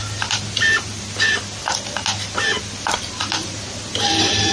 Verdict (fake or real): real